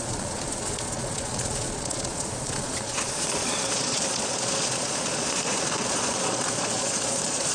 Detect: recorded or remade remade